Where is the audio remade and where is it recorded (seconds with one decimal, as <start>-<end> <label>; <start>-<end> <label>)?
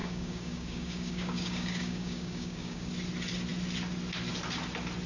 0.0-2.9 remade; 2.9-5.1 recorded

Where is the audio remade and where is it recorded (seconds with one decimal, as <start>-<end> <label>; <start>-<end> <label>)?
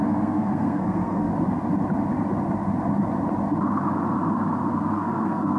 0.0-1.3 remade; 1.3-4.7 recorded; 4.7-5.6 remade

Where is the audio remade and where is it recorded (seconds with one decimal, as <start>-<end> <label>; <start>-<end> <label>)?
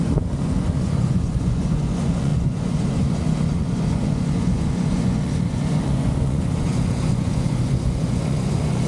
0.0-8.9 remade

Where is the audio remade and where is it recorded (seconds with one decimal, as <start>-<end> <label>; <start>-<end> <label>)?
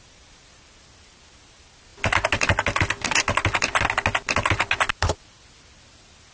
0.0-6.3 recorded